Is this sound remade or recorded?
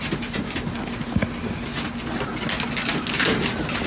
recorded